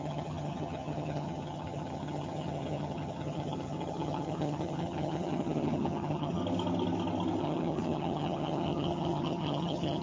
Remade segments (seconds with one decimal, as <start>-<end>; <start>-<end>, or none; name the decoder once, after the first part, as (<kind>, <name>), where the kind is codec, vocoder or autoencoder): 0.0-6.4 (vocoder, HiFi-GAN); 7.4-10.0